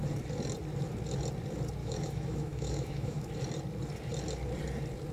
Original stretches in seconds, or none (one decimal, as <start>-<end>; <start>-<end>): 0.0-1.8; 3.3-5.1